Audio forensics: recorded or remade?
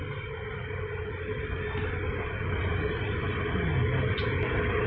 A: recorded